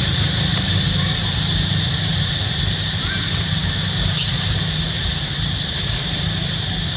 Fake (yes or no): yes